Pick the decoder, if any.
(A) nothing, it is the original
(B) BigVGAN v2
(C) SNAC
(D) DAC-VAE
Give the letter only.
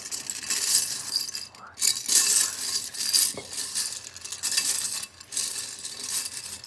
A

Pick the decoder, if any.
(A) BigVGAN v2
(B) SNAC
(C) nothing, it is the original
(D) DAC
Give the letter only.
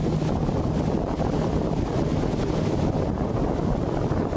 C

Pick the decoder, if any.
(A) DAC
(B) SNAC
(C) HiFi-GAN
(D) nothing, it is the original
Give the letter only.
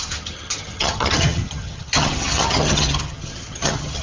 C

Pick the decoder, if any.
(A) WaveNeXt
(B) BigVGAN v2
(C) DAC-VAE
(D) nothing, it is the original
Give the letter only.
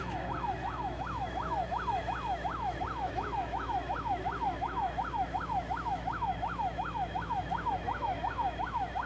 C